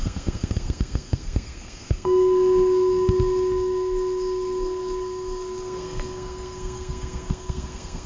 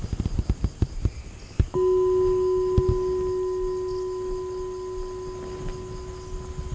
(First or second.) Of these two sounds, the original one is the second